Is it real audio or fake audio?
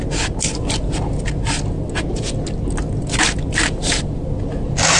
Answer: real